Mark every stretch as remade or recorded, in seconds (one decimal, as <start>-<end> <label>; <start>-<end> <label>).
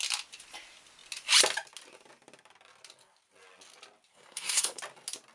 0.0-4.1 recorded; 4.1-4.8 remade; 4.8-5.3 recorded